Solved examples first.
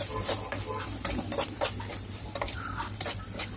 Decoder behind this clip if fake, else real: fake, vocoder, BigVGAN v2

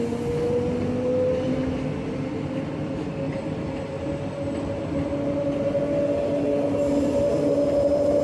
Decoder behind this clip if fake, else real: real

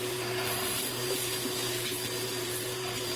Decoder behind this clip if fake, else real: fake, vocoder, BigVGAN v2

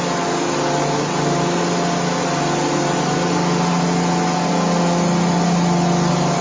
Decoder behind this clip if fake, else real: real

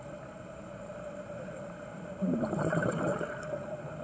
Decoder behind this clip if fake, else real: fake, vocoder, BigVGAN v2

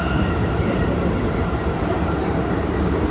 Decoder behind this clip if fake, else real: fake, vocoder, BigVGAN v2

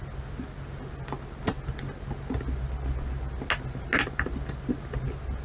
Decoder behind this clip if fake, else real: real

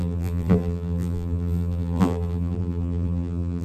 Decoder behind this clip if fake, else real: fake, vocoder, BigVGAN v2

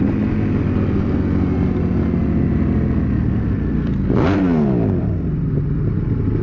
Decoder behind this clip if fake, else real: real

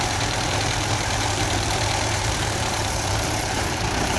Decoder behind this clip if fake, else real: fake, vocoder, BigVGAN v2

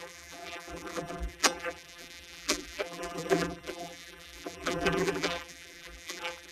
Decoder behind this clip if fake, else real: fake, vocoder, BigVGAN v2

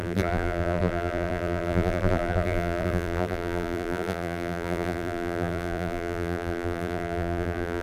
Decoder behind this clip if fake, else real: fake, vocoder, BigVGAN v2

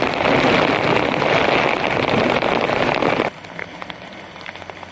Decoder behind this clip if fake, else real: real